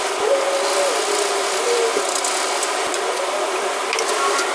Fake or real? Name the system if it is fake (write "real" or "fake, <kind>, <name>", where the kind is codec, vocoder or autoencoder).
real